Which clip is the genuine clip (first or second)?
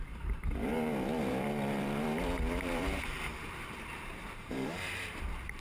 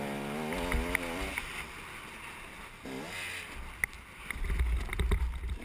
second